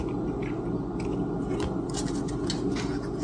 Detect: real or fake real